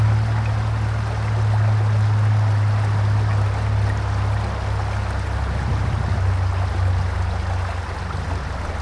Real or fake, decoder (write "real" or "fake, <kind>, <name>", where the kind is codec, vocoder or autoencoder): real